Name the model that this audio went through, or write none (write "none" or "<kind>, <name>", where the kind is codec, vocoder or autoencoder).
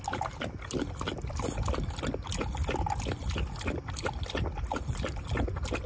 none